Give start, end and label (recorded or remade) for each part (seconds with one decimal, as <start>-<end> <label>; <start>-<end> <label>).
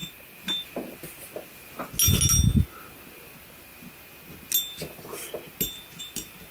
0.0-6.5 recorded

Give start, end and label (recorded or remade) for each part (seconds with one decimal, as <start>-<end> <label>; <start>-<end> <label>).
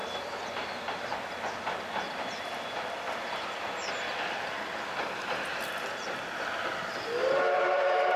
0.0-7.2 recorded; 7.2-8.2 remade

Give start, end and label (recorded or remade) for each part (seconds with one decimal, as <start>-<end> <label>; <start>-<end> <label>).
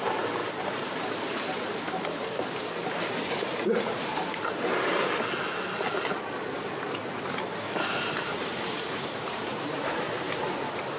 0.0-0.4 remade; 0.4-3.3 recorded; 3.3-4.5 remade; 4.5-7.8 recorded; 7.8-11.0 remade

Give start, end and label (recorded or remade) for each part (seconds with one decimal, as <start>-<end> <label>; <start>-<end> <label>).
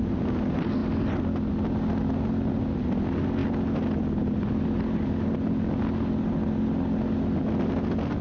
0.0-8.2 recorded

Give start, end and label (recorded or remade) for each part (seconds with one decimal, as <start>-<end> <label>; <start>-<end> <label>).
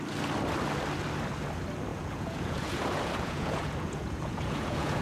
0.0-1.9 recorded; 1.9-5.0 remade